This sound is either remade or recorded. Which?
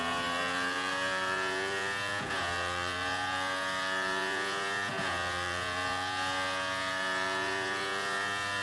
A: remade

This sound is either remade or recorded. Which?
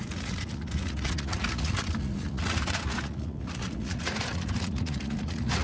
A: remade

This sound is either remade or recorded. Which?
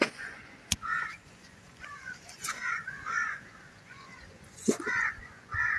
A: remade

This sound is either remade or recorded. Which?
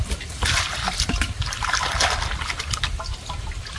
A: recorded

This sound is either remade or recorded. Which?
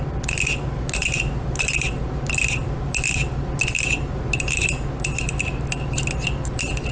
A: recorded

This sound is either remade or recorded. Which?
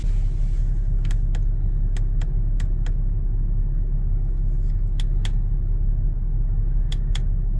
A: recorded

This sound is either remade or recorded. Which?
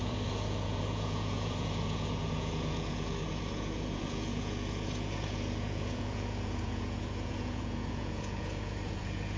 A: remade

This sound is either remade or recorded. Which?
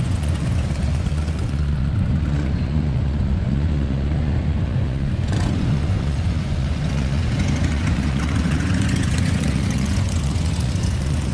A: remade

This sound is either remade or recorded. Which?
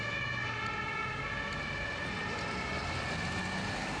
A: recorded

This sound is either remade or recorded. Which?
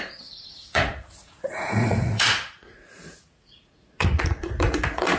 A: remade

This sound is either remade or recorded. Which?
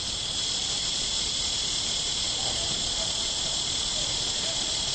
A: recorded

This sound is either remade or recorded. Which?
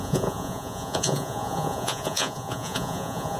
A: remade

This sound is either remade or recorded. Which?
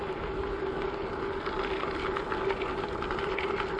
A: recorded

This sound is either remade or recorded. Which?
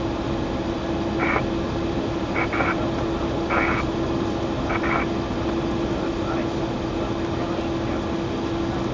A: recorded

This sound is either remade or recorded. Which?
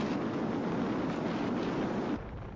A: recorded